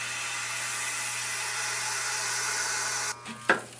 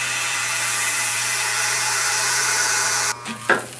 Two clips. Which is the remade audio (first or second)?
second